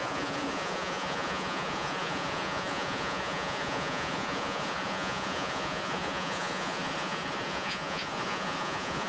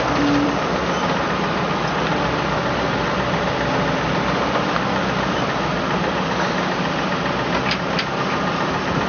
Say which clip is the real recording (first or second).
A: second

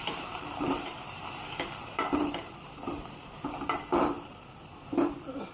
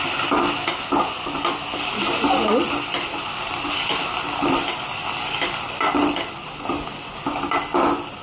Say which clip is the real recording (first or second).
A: second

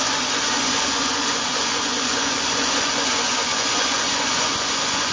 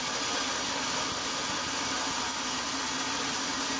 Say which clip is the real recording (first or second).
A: second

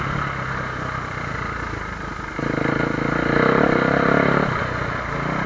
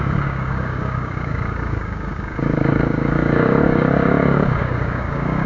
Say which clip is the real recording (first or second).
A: first